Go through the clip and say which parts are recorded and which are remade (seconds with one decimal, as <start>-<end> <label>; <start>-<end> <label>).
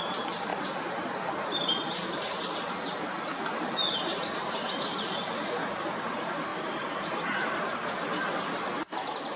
0.0-0.5 remade; 0.5-4.2 recorded; 4.2-9.4 remade